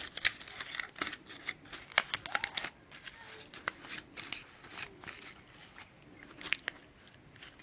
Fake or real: real